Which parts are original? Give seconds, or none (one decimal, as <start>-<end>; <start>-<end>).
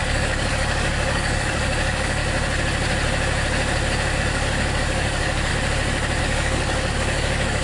2.2-4.2; 5.5-6.2